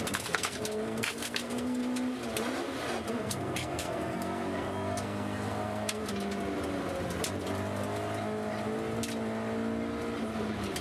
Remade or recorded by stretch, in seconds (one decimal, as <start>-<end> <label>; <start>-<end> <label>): 0.0-1.8 remade; 1.8-3.1 recorded; 3.1-6.0 remade; 6.0-10.8 recorded